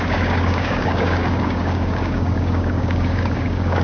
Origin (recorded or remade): remade